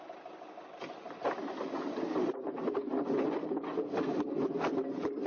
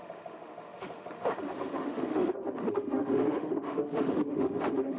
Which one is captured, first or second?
first